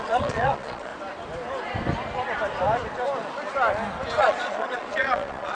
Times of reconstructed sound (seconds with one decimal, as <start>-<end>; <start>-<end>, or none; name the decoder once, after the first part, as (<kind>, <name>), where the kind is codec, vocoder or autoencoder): 0.0-0.9 (vocoder, Vocos); 4.2-5.5